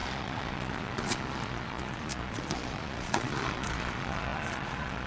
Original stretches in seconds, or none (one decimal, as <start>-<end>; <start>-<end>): none

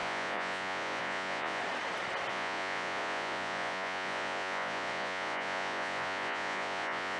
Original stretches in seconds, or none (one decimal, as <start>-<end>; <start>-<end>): 1.6-2.3

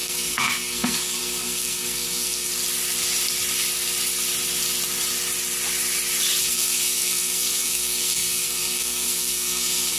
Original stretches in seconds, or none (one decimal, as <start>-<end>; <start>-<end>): 2.5-6.4

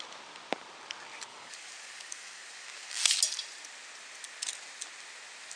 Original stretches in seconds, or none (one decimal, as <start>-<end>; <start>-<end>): 0.0-1.3; 3.2-5.6

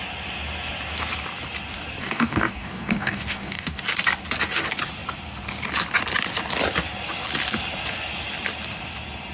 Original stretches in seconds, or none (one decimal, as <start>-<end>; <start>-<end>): 0.0-2.0; 3.8-9.3

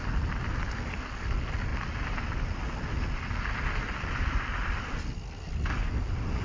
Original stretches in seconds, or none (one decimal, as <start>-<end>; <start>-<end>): 0.0-1.7; 5.5-6.4